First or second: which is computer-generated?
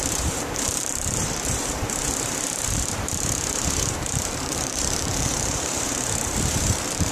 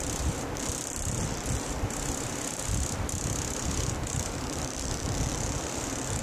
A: first